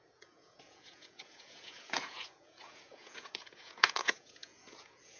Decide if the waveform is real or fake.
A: fake